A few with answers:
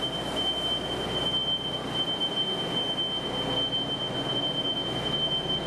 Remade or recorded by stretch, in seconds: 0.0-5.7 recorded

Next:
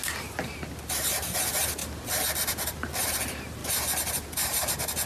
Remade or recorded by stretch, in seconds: 0.0-1.0 recorded; 1.0-1.8 remade; 1.8-3.0 recorded; 3.0-3.6 remade; 3.6-4.1 recorded; 4.1-5.1 remade

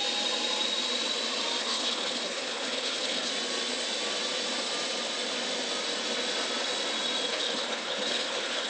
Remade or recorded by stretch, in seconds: 0.0-1.6 recorded; 1.6-3.3 remade; 3.3-7.3 recorded; 7.3-8.7 remade